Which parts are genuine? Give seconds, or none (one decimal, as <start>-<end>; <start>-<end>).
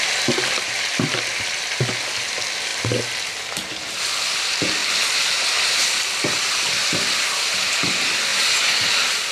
0.0-9.3